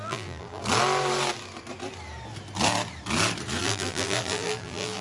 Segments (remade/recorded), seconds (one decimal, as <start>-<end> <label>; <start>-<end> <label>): 0.0-0.6 remade; 0.6-3.6 recorded; 3.6-5.0 remade